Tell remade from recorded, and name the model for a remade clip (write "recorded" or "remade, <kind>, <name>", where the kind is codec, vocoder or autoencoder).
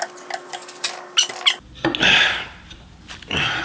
recorded